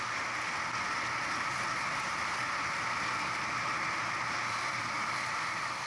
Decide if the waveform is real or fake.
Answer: real